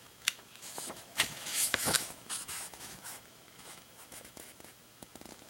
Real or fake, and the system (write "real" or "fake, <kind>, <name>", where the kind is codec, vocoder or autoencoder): fake, autoencoder, DAC-VAE